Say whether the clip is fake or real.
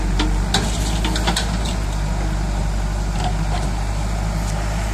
real